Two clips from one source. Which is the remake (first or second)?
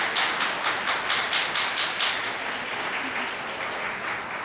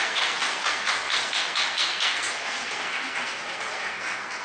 second